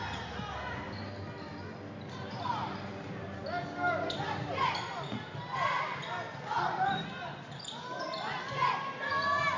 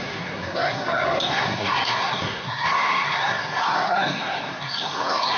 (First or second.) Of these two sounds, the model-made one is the second